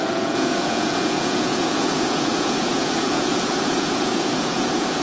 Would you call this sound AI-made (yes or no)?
yes